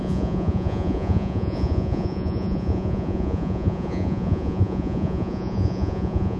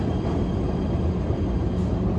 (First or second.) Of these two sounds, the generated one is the first